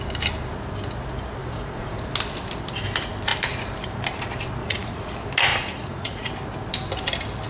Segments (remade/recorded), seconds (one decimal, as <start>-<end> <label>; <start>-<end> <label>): 0.0-1.4 recorded; 1.4-2.0 remade; 2.0-4.6 recorded; 4.6-5.1 remade; 5.1-5.5 recorded; 5.5-6.3 remade; 6.3-7.5 recorded